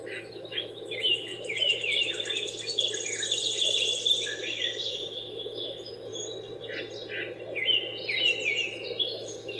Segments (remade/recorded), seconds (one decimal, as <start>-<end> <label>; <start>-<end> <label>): 0.0-1.3 remade; 1.3-4.9 recorded; 4.9-6.1 remade; 6.1-9.0 recorded; 9.0-9.6 remade